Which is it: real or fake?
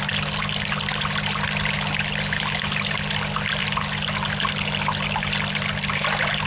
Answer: real